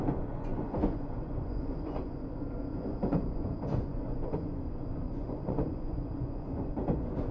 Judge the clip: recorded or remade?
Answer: remade